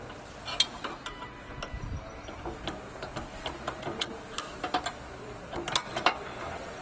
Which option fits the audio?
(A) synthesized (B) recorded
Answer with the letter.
B